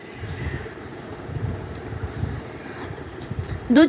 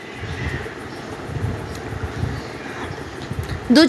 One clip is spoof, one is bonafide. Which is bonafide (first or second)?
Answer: second